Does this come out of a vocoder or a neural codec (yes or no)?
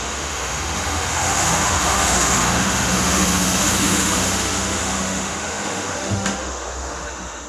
yes